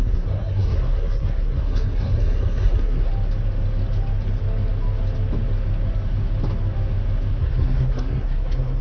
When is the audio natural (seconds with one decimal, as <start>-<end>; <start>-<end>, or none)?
3.1-7.4